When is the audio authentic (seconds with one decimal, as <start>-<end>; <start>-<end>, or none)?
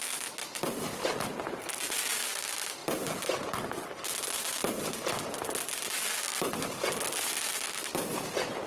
0.0-8.7